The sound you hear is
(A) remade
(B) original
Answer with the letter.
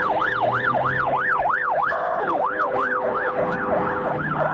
A